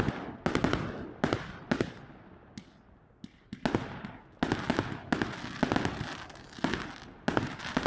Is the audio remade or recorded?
recorded